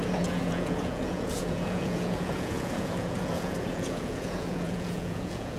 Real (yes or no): no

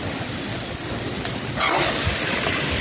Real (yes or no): yes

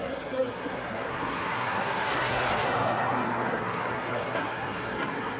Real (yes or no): no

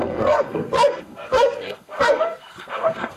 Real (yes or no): no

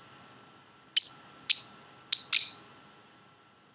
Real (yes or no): yes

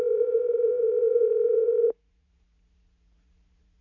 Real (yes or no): no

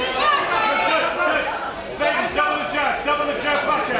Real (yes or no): yes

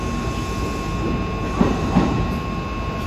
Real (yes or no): yes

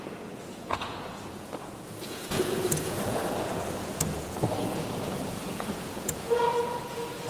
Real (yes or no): no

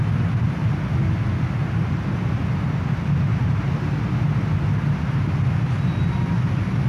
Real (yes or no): yes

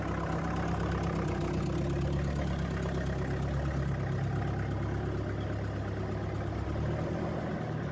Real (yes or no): yes